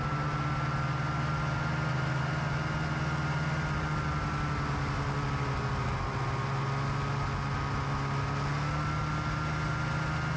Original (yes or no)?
yes